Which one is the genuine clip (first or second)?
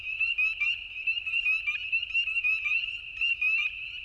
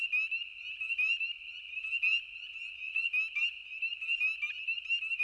second